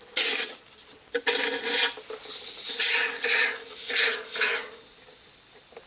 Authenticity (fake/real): real